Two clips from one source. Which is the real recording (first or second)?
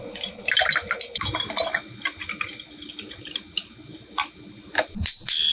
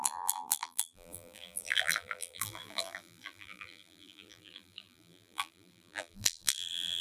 first